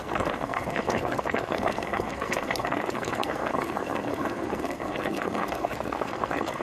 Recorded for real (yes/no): no